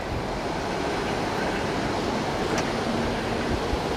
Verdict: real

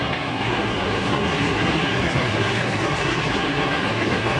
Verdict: fake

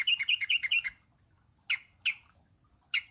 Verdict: real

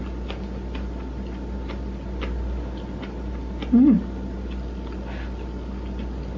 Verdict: real